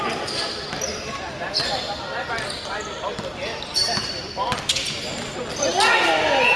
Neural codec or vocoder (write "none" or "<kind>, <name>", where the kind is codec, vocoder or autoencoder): none